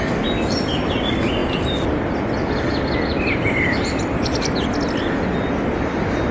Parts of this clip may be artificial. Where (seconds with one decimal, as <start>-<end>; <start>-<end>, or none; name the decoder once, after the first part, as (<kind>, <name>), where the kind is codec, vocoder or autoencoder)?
none